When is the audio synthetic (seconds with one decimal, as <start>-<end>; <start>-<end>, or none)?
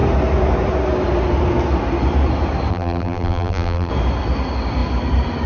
2.7-3.9